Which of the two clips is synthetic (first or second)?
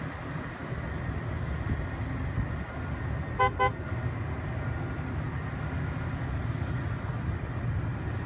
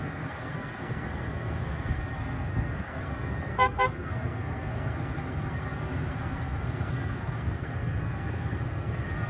second